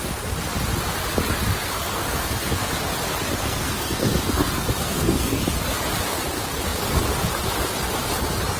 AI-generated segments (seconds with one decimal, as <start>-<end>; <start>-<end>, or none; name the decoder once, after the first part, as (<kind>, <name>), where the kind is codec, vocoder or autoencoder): 1.5-2.7 (codec, SNAC); 3.4-5.4